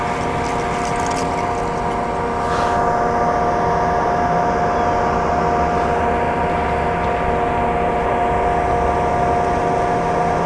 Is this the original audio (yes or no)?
yes